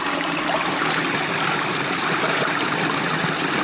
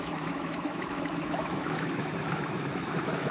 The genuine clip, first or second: first